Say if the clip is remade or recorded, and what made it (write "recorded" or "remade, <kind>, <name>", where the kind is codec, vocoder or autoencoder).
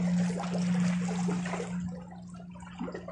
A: recorded